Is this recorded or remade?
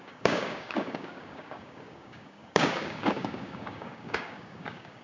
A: remade